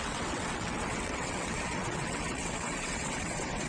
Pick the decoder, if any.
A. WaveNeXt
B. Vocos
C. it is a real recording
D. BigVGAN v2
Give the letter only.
A